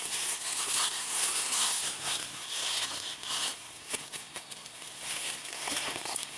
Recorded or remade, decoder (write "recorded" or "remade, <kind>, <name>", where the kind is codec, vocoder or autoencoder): remade, codec, SNAC